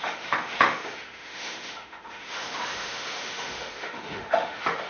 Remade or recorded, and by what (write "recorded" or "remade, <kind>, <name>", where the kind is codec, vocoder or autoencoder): remade, autoencoder, DAC-VAE